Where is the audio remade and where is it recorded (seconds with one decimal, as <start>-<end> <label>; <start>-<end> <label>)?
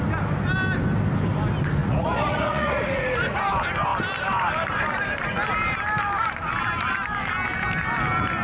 0.0-1.8 recorded; 1.8-3.4 remade; 3.4-8.4 recorded